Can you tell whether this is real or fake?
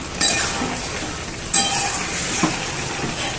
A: real